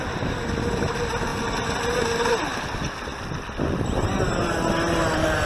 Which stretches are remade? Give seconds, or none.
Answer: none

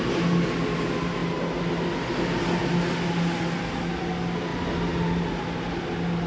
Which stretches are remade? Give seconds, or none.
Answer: none

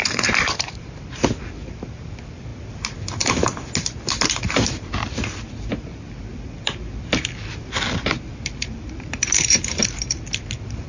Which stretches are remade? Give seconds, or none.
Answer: 0.0-2.5 (vocoder, BigVGAN v2); 4.8-10.9